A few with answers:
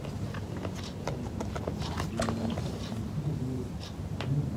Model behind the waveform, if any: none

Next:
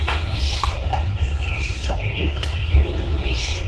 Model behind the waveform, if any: codec, SNAC